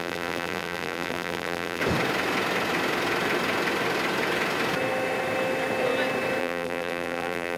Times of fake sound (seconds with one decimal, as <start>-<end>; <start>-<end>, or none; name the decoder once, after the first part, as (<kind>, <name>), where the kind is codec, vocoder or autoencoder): 0.0-1.8 (vocoder, BigVGAN v2); 6.4-7.6